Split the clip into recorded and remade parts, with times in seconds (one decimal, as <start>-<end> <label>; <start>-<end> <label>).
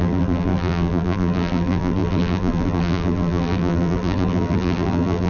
0.0-5.3 remade